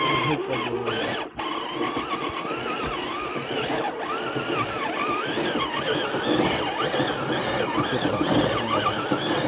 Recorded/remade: recorded